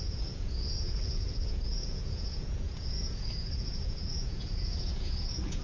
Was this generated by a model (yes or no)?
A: yes